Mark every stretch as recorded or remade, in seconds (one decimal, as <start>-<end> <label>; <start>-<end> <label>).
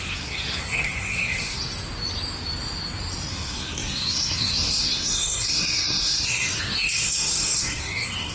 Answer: 0.0-1.6 remade; 1.6-3.3 recorded; 3.3-8.3 remade